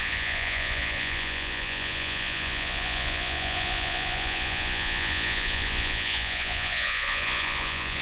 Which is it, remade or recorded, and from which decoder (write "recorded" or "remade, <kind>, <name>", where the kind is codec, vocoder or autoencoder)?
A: remade, vocoder, Vocos